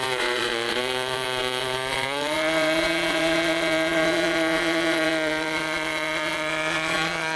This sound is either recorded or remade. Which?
remade